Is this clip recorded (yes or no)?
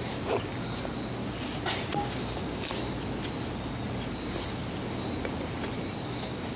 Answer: yes